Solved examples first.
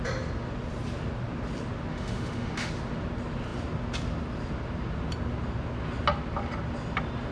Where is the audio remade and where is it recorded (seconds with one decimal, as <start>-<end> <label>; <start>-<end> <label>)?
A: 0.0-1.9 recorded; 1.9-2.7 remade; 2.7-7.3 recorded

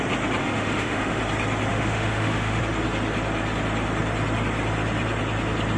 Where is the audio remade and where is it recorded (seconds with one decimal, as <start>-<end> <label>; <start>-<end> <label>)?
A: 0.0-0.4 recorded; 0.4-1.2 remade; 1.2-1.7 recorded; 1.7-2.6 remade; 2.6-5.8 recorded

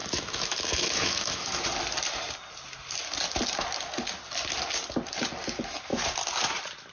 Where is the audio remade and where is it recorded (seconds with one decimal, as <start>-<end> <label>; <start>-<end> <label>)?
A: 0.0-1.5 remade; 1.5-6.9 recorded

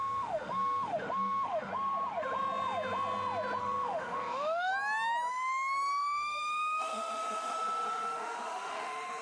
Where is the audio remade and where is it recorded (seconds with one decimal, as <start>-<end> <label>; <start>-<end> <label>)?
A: 0.0-1.7 remade; 1.7-3.6 recorded; 3.6-4.7 remade; 4.7-5.3 recorded; 5.3-9.2 remade